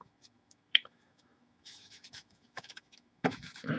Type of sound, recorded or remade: remade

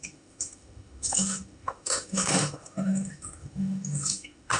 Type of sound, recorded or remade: remade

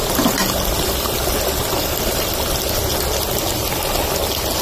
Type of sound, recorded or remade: recorded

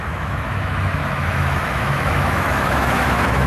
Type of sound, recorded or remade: remade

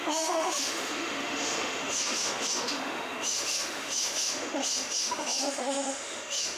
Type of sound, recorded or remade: remade